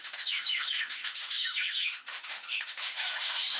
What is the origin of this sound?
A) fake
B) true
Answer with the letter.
A